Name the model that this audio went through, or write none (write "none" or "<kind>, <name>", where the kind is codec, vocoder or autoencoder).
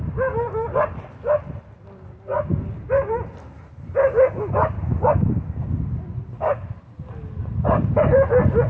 none